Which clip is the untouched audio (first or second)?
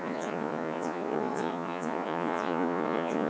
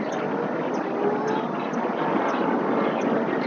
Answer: second